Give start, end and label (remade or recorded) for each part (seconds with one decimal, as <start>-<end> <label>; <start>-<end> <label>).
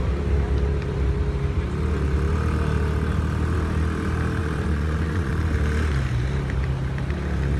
0.0-4.4 recorded; 4.4-5.3 remade; 5.3-7.6 recorded